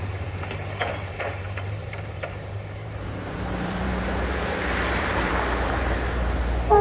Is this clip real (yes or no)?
no